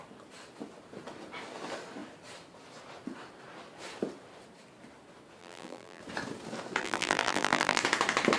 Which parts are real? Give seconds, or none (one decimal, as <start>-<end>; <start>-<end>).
0.0-5.4; 6.0-6.8; 7.8-8.4